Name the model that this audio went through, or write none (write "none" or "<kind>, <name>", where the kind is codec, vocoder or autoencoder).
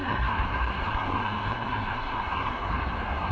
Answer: codec, SNAC